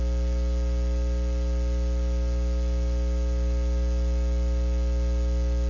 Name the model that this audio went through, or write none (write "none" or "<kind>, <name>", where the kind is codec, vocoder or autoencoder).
none